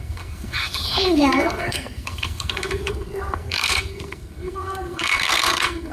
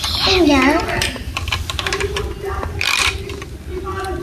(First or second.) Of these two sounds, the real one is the second